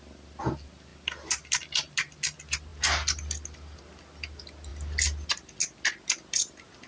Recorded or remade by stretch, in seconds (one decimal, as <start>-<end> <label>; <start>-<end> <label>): 0.0-6.9 recorded